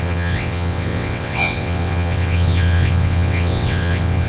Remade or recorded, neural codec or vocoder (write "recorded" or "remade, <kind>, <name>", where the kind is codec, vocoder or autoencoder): remade, vocoder, WaveNeXt